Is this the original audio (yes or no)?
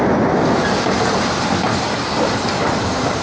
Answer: yes